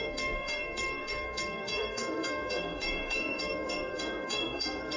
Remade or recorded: remade